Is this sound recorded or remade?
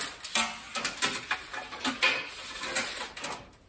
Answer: recorded